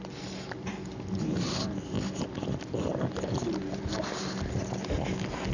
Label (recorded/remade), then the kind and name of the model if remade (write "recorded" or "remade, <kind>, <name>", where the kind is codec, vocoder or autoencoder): recorded